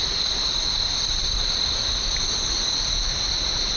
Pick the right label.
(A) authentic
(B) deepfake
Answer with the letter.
A